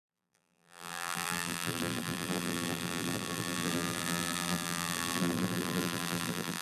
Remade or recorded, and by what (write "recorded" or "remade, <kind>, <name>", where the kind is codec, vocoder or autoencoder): remade, vocoder, BigVGAN v2